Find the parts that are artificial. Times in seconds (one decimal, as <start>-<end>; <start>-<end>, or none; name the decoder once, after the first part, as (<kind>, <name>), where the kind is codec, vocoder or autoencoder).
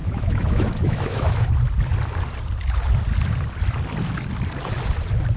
0.0-1.5 (autoencoder, DAC-VAE)